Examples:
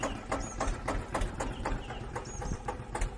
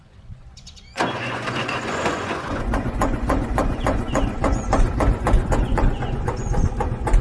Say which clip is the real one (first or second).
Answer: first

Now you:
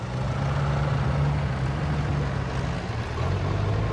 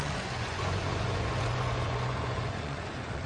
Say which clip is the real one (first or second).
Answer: first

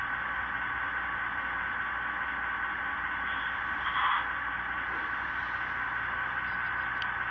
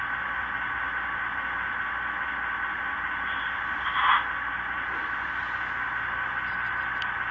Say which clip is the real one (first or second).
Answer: second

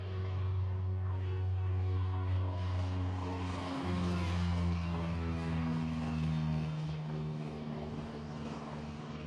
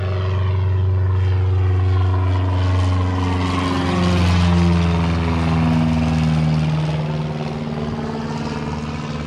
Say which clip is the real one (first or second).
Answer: second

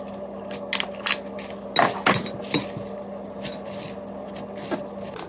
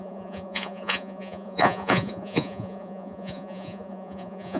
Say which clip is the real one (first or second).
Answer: first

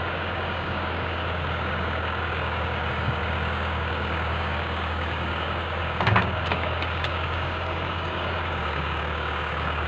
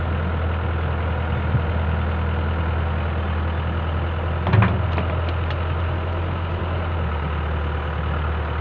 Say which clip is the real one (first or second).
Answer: second